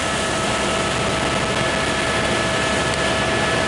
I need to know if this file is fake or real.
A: real